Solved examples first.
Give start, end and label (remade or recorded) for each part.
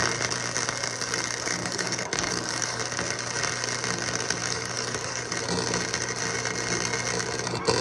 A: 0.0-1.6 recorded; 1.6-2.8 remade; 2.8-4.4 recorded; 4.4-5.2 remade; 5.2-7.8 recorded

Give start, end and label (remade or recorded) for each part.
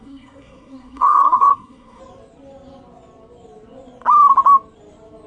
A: 0.0-2.0 remade; 2.0-5.3 recorded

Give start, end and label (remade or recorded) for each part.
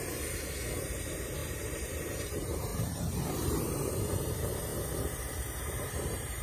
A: 0.0-4.7 remade; 4.7-5.6 recorded; 5.6-6.4 remade